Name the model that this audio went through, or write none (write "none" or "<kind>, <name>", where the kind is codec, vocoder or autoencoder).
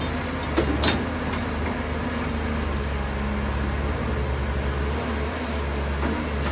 none